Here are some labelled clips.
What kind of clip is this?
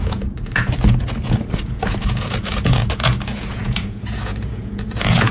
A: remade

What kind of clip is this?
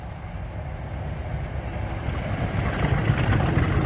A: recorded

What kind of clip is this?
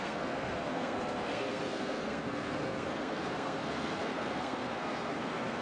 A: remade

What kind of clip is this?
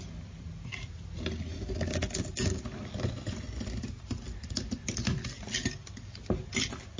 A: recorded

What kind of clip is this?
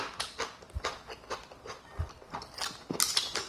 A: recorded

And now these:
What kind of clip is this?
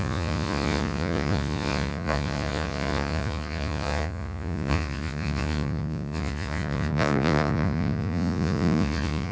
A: remade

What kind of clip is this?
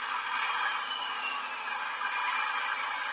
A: recorded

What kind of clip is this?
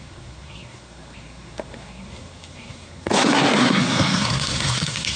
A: remade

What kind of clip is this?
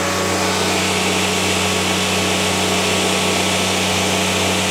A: recorded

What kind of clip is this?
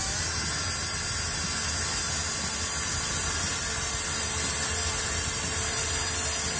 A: recorded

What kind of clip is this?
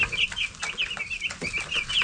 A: recorded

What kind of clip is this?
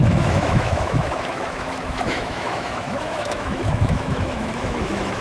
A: remade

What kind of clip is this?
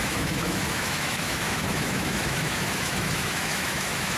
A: remade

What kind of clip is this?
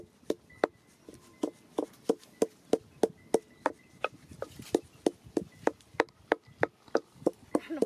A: recorded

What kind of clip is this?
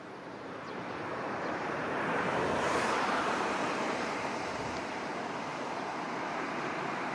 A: remade